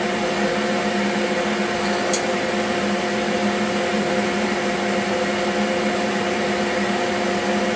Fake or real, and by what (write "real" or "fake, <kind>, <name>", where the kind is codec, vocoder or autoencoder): real